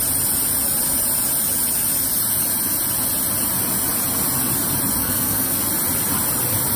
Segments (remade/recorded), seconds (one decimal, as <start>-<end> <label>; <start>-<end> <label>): 0.0-5.0 recorded; 5.0-5.6 remade; 5.6-6.8 recorded